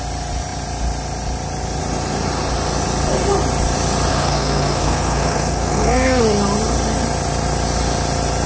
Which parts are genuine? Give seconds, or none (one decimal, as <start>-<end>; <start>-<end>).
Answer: 0.0-4.1; 6.2-8.5